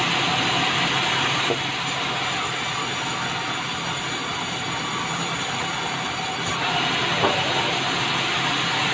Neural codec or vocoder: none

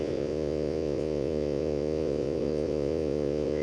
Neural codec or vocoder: vocoder, Vocos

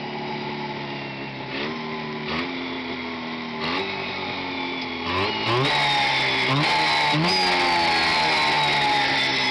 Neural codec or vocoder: none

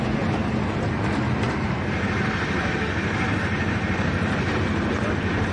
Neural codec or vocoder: none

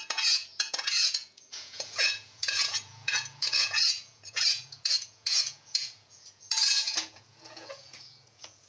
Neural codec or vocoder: vocoder, Vocos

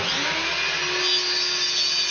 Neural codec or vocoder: none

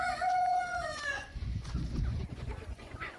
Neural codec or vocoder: vocoder, Vocos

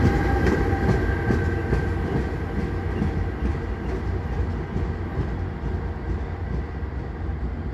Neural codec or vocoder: none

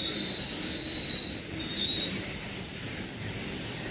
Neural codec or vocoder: none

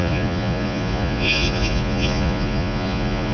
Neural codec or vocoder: vocoder, Vocos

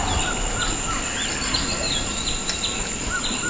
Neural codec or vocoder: none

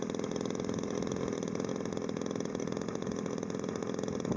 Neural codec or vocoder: none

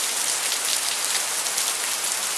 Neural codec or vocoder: none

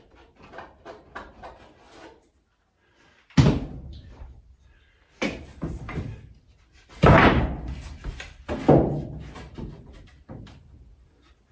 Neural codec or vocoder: none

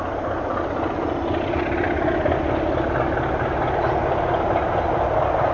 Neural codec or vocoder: none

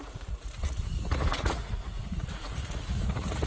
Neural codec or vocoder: vocoder, Vocos